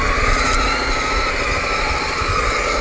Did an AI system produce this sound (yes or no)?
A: no